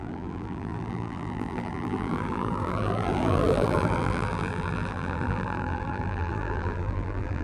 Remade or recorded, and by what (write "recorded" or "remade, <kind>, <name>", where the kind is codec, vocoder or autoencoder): remade, vocoder, BigVGAN v2